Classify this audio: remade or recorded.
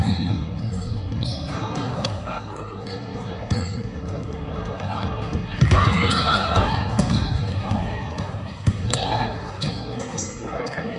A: remade